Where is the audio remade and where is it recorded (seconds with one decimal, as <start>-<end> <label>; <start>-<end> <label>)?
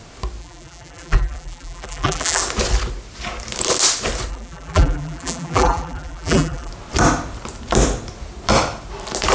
0.0-0.4 recorded; 0.4-2.4 remade; 2.4-4.3 recorded; 4.3-6.7 remade; 6.7-9.3 recorded